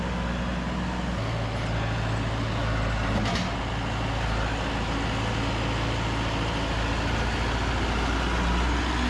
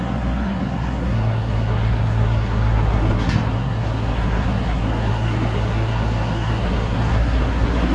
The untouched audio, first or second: first